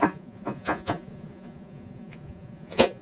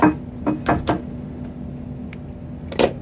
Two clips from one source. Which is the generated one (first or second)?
first